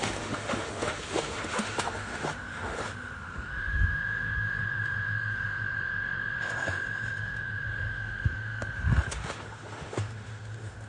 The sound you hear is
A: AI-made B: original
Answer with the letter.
A